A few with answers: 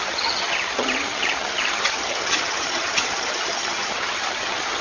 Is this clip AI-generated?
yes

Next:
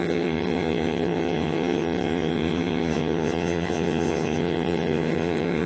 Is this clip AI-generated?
yes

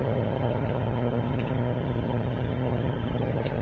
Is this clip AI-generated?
yes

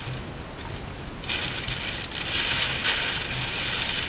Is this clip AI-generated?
no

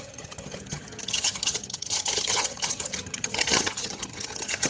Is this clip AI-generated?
yes